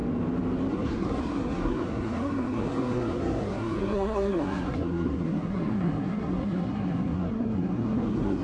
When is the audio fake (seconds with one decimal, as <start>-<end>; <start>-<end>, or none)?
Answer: 0.7-8.4